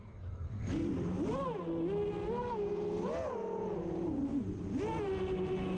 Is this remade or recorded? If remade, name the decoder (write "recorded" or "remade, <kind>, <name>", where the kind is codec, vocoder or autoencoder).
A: recorded